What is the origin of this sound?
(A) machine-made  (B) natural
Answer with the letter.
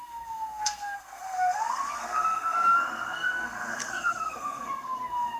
A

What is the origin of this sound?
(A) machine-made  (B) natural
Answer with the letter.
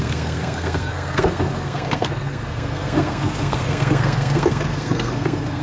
A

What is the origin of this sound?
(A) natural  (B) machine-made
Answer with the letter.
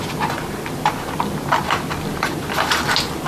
A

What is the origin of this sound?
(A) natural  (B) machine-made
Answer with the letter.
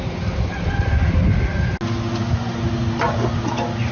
A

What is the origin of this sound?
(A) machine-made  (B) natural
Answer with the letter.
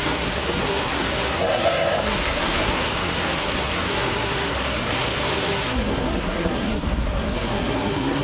A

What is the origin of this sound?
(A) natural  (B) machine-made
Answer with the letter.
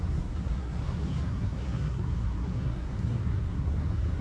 B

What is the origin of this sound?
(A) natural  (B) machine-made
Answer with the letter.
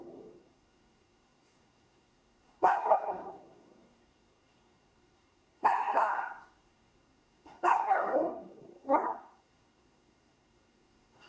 B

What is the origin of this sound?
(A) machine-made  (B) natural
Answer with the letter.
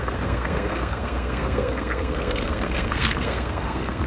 A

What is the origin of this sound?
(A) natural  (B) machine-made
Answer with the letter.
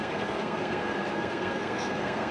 B